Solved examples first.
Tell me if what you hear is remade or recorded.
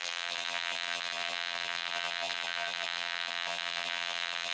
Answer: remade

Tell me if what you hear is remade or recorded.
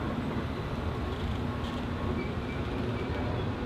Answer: recorded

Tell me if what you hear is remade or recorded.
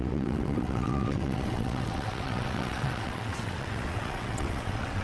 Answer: remade